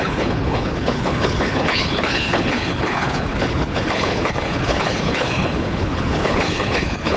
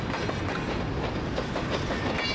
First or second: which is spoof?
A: first